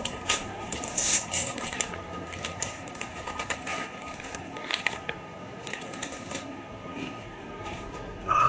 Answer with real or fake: fake